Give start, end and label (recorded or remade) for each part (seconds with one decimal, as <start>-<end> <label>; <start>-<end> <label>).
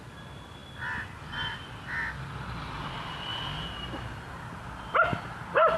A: 0.0-5.8 recorded